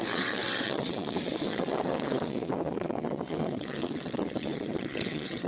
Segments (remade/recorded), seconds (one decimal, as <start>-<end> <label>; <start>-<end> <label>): 0.0-5.5 remade